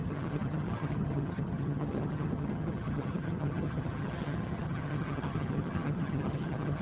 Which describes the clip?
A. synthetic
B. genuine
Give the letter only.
A